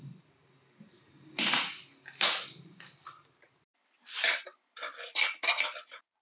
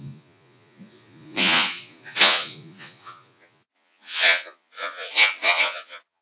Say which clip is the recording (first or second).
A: first